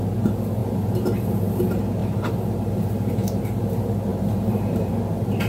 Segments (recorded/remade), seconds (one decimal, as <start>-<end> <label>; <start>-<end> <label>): 0.0-0.6 recorded; 0.6-1.6 remade; 1.6-2.0 recorded; 2.0-3.4 remade; 3.4-4.1 recorded; 4.1-4.9 remade; 4.9-5.5 recorded